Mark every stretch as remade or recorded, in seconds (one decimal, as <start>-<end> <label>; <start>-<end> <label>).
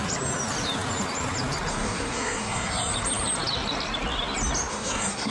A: 0.0-1.7 recorded; 1.7-2.9 remade; 2.9-4.7 recorded; 4.7-5.3 remade